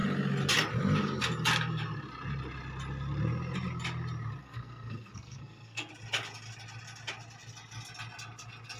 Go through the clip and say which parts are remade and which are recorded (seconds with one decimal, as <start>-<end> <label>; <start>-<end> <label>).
0.0-4.4 recorded; 4.4-5.9 remade; 5.9-8.8 recorded